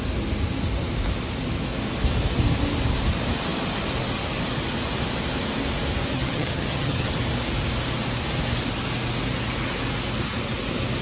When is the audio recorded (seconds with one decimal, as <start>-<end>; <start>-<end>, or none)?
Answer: 0.0-6.1; 7.1-11.0